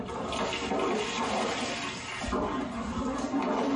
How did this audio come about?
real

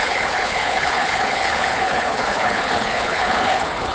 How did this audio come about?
fake